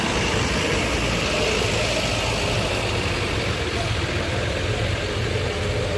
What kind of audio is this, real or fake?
real